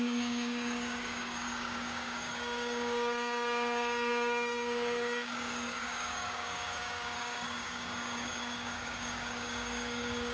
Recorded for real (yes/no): no